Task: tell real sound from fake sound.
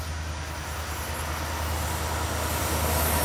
real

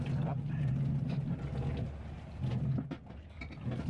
real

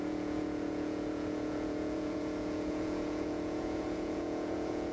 fake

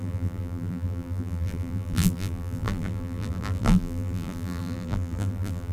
fake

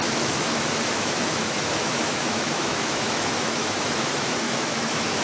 fake